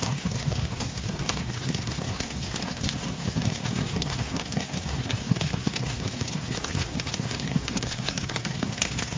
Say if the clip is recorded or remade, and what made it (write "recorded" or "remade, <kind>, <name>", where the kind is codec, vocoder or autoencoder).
remade, codec, SNAC